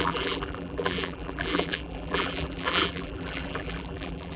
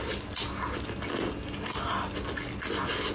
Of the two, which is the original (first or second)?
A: second